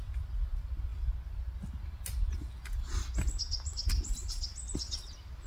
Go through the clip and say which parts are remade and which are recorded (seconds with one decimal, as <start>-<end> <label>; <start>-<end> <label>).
0.0-5.5 recorded